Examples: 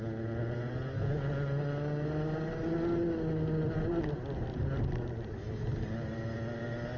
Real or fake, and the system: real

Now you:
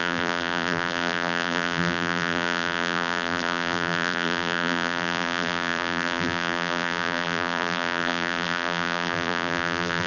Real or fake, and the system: fake, vocoder, BigVGAN v2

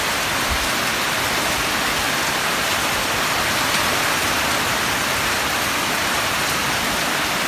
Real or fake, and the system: real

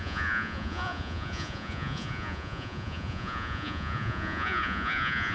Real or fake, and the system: fake, vocoder, Vocos